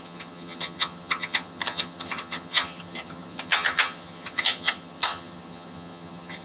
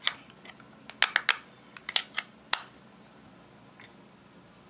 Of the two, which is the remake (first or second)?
first